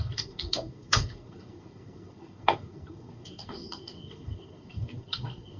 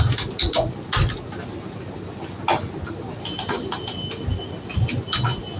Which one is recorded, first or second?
second